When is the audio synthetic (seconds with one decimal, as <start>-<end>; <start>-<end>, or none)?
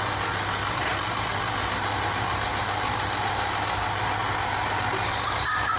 none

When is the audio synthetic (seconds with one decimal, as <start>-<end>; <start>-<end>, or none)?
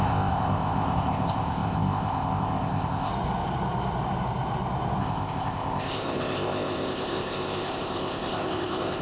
0.0-3.1; 5.0-9.0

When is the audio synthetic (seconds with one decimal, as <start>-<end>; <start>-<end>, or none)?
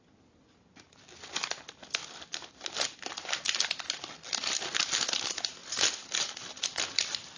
none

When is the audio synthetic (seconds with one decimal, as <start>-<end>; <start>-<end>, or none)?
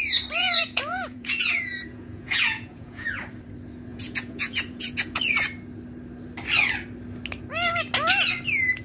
0.4-3.2; 3.9-5.2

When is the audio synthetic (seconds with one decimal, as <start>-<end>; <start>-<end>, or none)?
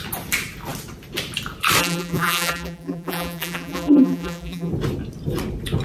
1.8-4.7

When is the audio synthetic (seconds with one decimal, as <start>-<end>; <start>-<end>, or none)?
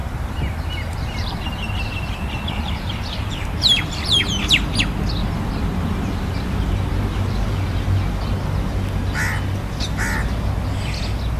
0.0-4.2; 5.2-7.8